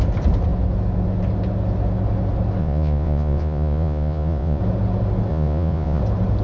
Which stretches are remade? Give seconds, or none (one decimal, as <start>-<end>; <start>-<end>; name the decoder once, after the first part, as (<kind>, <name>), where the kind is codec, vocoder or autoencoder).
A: 2.6-4.6 (vocoder, Vocos); 5.3-6.0